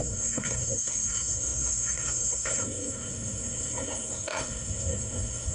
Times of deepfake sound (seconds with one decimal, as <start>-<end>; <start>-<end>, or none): 0.0-5.5